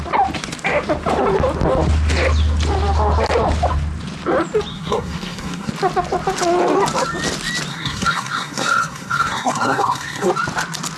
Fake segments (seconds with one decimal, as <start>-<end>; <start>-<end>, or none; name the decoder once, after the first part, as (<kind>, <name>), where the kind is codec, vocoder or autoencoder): 4.7-5.7 (codec, SNAC); 7.7-10.3